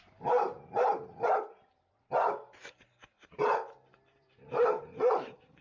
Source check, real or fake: fake